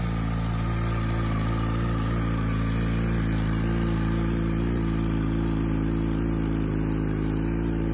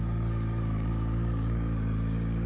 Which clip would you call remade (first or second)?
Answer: second